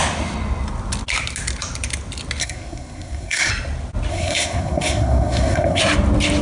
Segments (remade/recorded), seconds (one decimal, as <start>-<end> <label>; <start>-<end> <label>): 0.0-2.4 recorded; 2.4-3.5 remade; 3.5-4.1 recorded; 4.1-5.8 remade; 5.8-6.4 recorded